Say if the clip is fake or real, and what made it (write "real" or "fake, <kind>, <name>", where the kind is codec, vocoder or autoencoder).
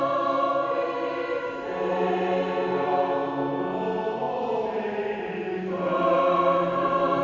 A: real